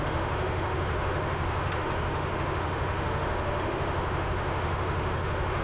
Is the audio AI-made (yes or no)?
yes